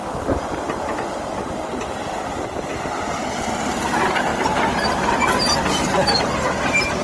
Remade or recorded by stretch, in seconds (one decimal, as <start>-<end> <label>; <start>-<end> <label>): 0.0-7.0 recorded